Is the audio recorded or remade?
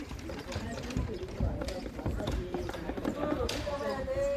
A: remade